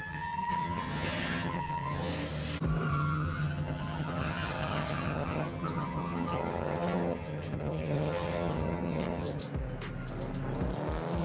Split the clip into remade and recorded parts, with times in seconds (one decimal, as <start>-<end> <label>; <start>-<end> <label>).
0.0-2.1 remade; 2.1-2.9 recorded; 2.9-9.4 remade; 9.4-11.2 recorded